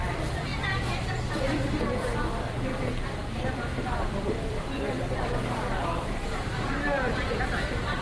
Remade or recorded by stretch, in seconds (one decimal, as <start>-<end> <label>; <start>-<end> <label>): 0.0-2.7 remade; 2.7-3.3 recorded; 3.3-8.0 remade